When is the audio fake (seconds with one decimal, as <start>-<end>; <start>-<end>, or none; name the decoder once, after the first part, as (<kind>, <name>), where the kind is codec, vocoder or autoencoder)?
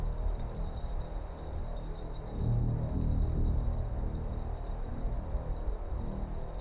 none